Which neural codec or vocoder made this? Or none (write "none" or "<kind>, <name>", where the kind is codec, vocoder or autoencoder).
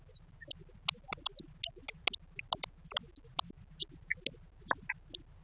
none